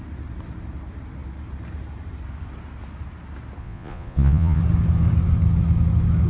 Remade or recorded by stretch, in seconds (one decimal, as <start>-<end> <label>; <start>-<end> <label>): 0.0-3.6 recorded; 3.6-4.6 remade; 4.6-6.3 recorded